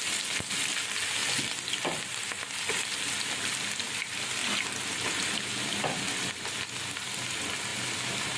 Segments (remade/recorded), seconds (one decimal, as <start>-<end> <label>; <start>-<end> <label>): 0.0-1.2 recorded; 1.2-2.4 remade; 2.4-4.4 recorded; 4.4-5.8 remade; 5.8-8.4 recorded